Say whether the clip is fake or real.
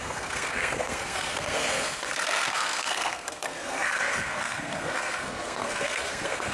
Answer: fake